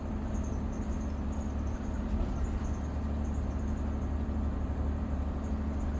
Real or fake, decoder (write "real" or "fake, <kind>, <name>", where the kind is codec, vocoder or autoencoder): real